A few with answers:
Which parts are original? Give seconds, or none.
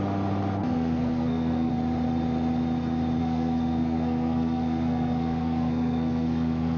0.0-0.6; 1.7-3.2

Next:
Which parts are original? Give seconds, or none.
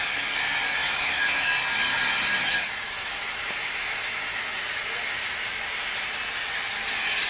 0.0-0.7; 1.5-2.4; 4.6-7.3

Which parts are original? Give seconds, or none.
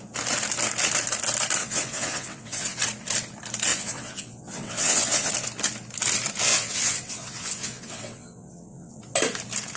0.0-1.6; 2.8-3.7; 5.3-6.5; 8.9-9.8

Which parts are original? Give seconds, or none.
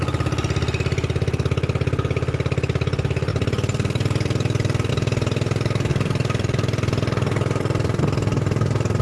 0.0-3.3; 4.9-5.9; 8.0-9.0